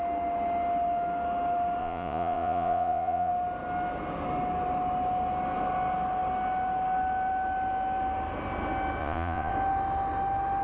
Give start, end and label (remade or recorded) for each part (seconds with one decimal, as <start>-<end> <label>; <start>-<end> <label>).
0.0-1.8 recorded; 1.8-3.3 remade; 3.3-9.0 recorded; 9.0-9.5 remade; 9.5-10.6 recorded